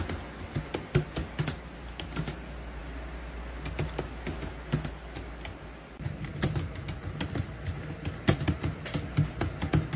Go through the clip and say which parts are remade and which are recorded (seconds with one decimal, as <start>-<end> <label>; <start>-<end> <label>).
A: 0.0-10.0 recorded